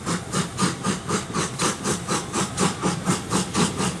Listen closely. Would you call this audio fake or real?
real